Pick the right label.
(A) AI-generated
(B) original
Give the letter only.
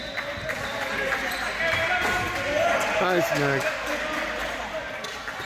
B